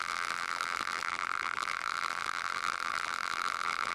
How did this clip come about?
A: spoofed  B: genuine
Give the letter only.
A